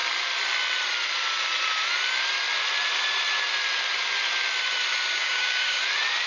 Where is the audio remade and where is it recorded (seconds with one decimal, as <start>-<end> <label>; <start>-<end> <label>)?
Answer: 0.0-5.2 recorded; 5.2-5.8 remade; 5.8-6.3 recorded